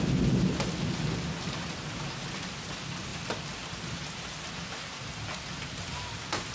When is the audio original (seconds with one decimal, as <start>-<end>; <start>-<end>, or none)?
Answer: 0.0-6.5